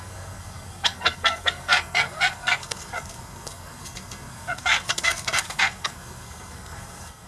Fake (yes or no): yes